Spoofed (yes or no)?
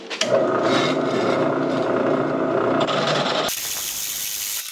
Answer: no